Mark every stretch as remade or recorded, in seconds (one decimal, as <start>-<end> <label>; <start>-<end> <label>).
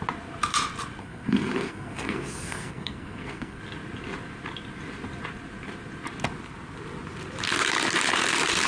0.0-1.0 recorded; 1.0-3.6 remade; 3.6-8.7 recorded